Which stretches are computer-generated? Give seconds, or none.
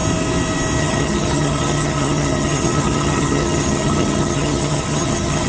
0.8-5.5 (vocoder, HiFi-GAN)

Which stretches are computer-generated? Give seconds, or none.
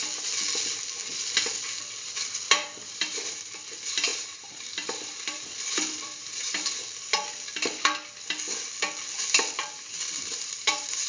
2.5-6.8 (vocoder, BigVGAN v2); 10.3-11.1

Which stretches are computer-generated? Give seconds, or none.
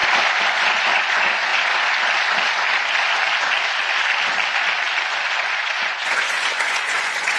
0.5-1.5 (vocoder, Vocos); 5.3-7.4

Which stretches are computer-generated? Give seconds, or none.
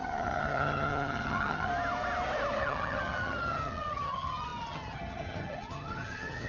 0.0-1.7 (vocoder, HiFi-GAN); 2.6-6.5